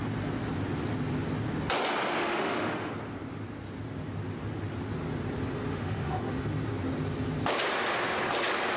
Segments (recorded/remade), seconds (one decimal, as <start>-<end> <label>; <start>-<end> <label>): 0.0-2.2 recorded; 2.2-2.9 remade; 2.9-5.7 recorded; 5.7-6.3 remade; 6.3-8.8 recorded